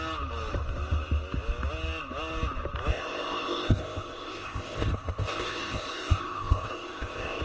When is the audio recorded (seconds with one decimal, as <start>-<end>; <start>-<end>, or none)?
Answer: 0.0-2.9